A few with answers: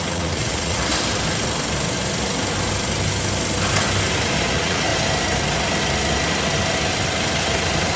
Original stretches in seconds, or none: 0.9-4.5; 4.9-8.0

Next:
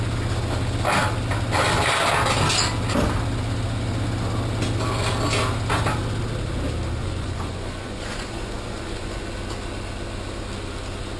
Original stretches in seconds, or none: 0.0-7.0; 9.2-11.2

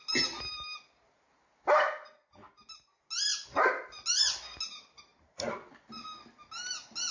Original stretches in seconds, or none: 0.0-7.1

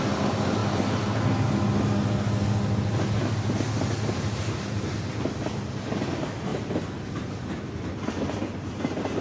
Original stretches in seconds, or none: 0.0-9.2

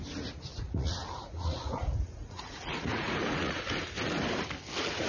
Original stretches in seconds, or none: 0.0-0.5; 3.6-5.1